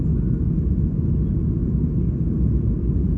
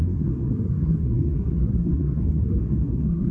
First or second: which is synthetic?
second